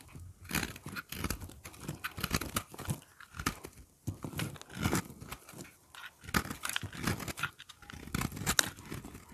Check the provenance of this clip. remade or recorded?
recorded